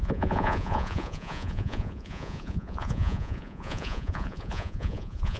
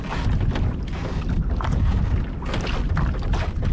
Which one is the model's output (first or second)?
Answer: first